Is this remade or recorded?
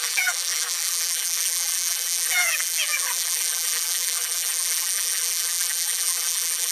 remade